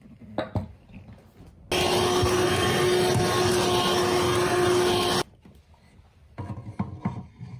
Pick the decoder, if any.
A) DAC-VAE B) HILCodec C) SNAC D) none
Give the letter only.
D